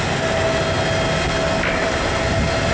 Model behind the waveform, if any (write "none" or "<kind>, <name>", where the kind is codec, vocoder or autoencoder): none